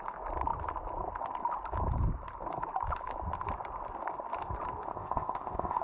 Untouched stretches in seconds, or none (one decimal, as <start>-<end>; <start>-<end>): 0.0-4.9